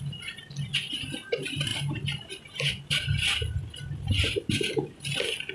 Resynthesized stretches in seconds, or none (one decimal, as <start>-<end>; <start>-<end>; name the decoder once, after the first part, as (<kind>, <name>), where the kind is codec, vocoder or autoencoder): none